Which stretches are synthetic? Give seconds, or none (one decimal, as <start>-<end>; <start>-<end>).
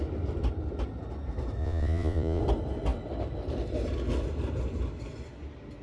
1.6-2.4